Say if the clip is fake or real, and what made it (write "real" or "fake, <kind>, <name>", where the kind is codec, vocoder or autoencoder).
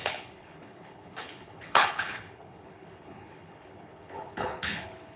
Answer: fake, codec, HILCodec